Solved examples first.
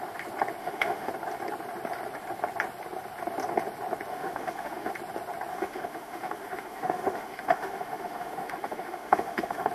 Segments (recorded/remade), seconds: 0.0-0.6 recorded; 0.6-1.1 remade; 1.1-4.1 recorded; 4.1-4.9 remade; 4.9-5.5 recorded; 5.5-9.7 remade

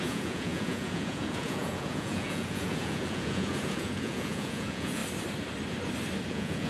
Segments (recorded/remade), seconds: 0.0-5.0 remade; 5.0-6.3 recorded; 6.3-6.7 remade

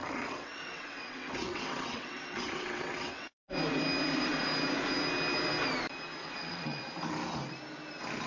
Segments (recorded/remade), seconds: 0.0-3.4 remade; 3.4-6.2 recorded; 6.2-6.8 remade; 6.8-8.3 recorded